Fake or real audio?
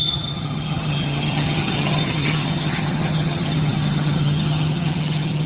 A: fake